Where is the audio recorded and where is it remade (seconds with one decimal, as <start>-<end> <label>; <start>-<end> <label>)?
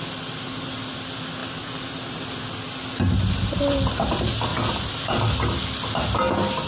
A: 0.0-6.7 recorded